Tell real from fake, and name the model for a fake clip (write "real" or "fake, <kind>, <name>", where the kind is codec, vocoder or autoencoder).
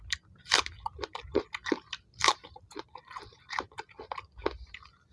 real